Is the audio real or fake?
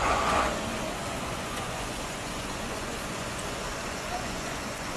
fake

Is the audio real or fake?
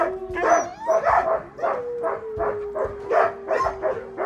real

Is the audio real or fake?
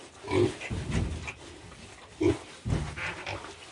real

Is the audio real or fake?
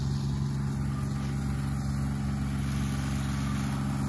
real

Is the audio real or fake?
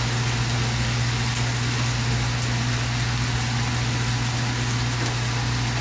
real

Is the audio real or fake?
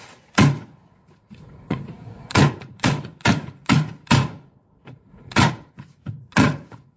fake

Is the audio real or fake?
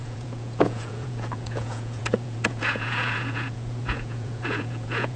fake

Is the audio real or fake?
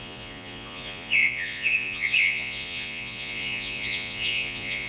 fake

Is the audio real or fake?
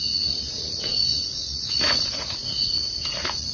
fake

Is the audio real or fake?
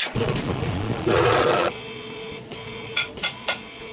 fake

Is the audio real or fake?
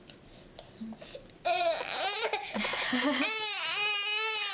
real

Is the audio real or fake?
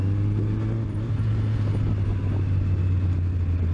real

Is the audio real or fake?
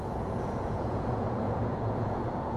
fake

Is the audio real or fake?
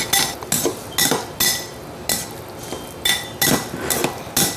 real